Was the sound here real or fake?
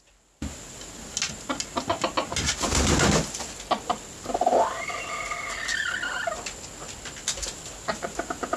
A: real